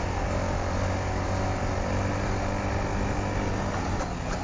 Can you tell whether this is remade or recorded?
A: recorded